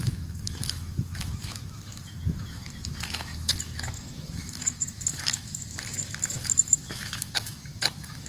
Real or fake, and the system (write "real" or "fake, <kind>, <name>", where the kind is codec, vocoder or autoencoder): fake, autoencoder, DAC-VAE